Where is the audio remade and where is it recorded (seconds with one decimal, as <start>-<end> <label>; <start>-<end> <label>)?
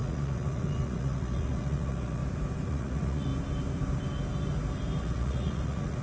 0.0-2.2 remade; 2.2-2.7 recorded; 2.7-3.3 remade; 3.3-5.0 recorded; 5.0-6.0 remade